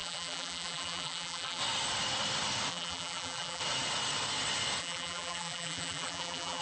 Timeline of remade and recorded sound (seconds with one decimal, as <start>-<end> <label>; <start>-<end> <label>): 0.0-1.6 remade; 1.6-2.7 recorded; 2.7-3.6 remade; 3.6-4.8 recorded; 4.8-6.6 remade